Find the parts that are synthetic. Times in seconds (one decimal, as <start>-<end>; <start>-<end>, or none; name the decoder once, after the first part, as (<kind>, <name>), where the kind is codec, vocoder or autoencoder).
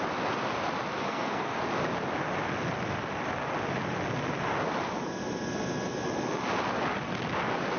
1.0-1.6 (codec, SNAC)